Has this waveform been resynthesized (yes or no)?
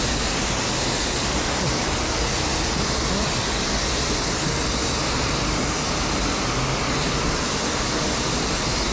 no